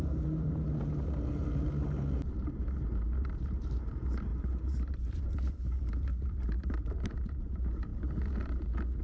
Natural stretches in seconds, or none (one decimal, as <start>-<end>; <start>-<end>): 7.9-9.0